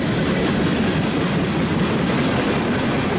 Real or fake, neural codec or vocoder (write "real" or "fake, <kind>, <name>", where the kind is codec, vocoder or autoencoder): real